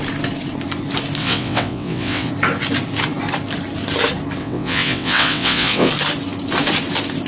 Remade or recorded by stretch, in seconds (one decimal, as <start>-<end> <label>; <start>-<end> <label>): 0.0-1.2 recorded; 1.2-2.3 remade; 2.3-4.4 recorded; 4.4-5.9 remade; 5.9-7.3 recorded